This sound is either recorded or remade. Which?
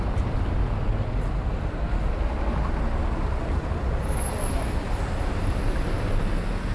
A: recorded